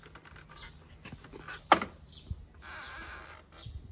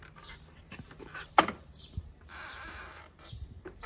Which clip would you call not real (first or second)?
second